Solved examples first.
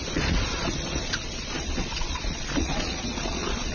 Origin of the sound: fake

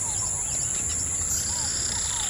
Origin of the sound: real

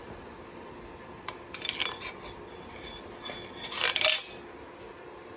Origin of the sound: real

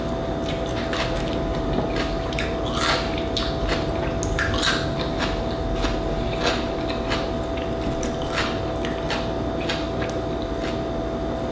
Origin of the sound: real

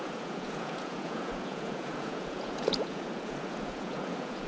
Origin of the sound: fake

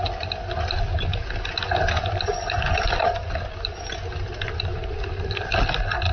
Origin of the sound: real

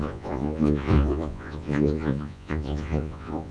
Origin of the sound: fake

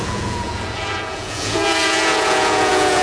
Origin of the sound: fake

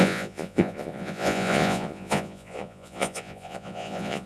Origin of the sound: fake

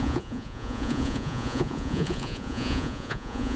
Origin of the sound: fake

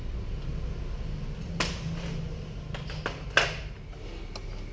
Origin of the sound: real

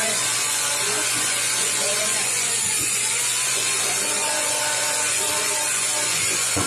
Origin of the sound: fake